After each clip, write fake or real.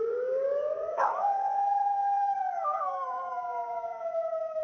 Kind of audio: fake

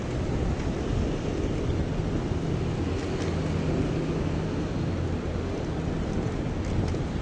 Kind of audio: real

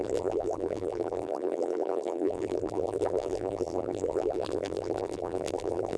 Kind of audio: fake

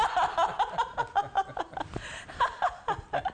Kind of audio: real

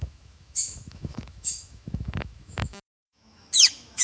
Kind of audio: fake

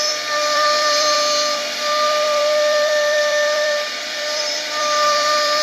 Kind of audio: fake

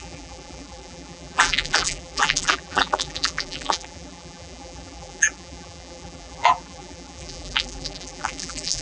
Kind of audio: fake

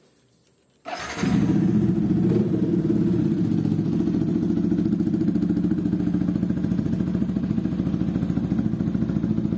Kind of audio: real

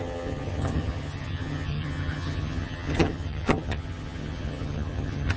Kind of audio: fake